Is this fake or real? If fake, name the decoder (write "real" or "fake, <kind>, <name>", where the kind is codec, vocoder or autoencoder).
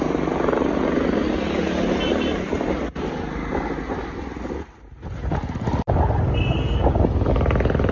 real